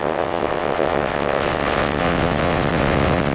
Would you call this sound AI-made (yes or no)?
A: yes